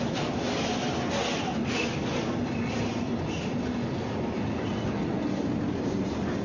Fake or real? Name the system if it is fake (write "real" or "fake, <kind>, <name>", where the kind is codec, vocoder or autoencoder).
real